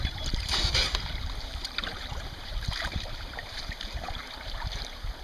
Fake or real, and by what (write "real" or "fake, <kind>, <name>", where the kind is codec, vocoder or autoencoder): fake, vocoder, BigVGAN v2